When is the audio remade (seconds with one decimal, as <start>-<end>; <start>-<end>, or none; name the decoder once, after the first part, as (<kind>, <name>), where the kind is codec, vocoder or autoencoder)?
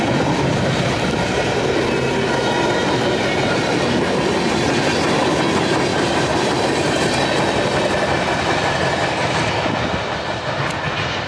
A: 5.9-6.9 (vocoder, BigVGAN v2)